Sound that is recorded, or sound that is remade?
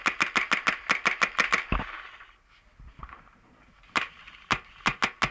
recorded